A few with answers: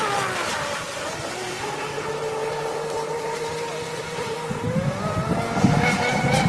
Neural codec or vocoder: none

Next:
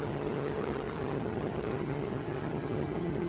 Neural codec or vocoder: vocoder, HiFi-GAN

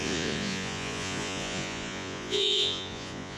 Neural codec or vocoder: vocoder, Vocos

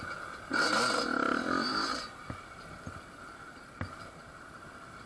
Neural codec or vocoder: vocoder, BigVGAN v2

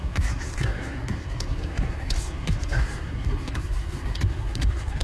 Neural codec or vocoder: codec, SNAC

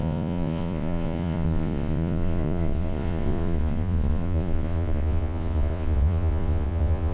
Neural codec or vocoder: vocoder, Vocos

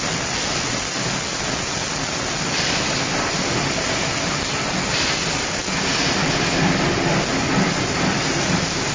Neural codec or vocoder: none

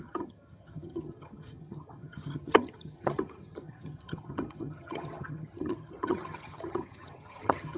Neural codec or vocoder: vocoder, HiFi-GAN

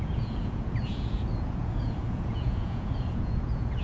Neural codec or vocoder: vocoder, Vocos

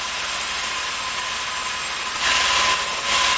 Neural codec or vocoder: none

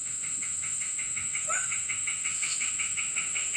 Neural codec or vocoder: autoencoder, DAC-VAE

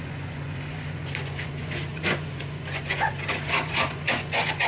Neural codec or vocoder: vocoder, Vocos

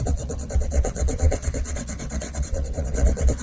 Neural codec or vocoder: vocoder, WaveNeXt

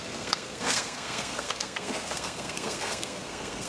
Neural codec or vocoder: codec, SNAC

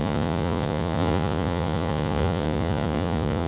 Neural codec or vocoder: vocoder, Vocos